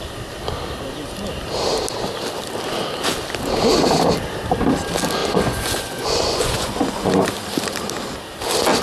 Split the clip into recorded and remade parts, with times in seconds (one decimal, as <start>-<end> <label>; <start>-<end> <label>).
0.0-5.2 recorded; 5.2-7.1 remade; 7.1-8.8 recorded